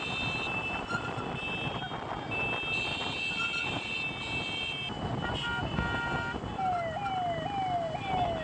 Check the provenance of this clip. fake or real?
real